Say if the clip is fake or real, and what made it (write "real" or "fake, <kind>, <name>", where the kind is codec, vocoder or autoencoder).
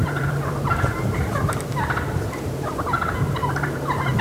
fake, vocoder, BigVGAN v2